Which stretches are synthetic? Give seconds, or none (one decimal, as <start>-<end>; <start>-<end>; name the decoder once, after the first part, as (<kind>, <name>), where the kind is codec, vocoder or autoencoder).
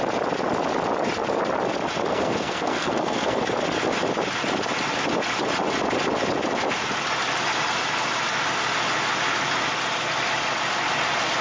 2.1-3.4 (codec, SNAC)